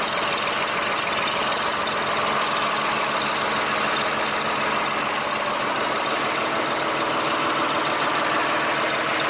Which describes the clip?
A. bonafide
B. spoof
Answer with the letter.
A